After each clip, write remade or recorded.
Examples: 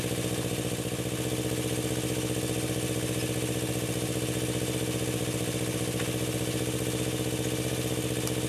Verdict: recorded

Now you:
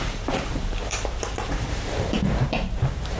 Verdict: remade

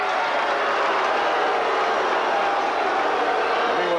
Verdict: recorded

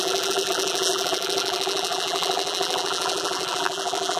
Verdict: remade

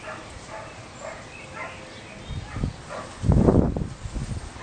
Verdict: recorded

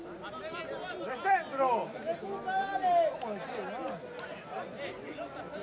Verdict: recorded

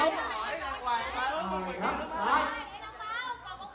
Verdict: recorded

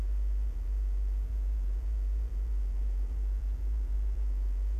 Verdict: remade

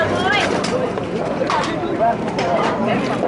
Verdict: remade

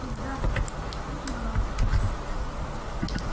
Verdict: recorded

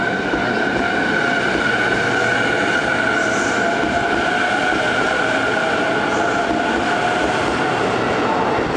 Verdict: recorded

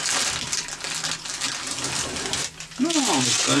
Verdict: recorded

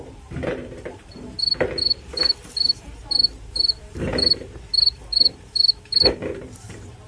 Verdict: remade